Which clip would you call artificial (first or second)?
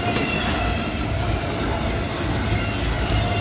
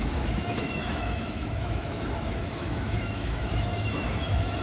second